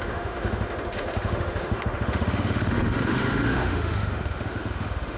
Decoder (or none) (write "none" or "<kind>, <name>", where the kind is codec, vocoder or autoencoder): autoencoder, DAC-VAE